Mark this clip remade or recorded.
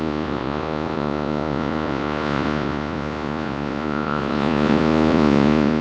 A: remade